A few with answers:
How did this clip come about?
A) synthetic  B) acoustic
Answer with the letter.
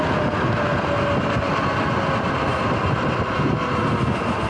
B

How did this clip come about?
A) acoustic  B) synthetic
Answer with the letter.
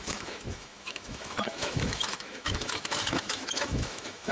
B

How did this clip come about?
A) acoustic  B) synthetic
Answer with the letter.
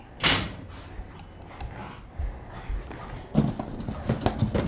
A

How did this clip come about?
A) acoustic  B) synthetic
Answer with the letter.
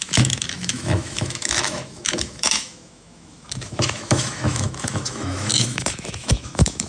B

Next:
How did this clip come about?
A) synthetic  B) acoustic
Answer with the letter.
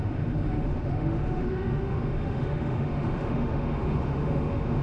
A